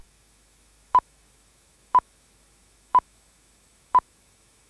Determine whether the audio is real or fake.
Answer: fake